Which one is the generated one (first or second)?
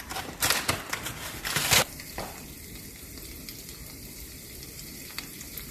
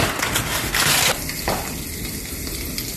first